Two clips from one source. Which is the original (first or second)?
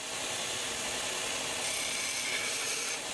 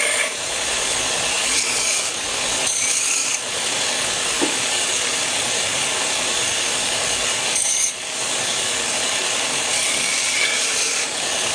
first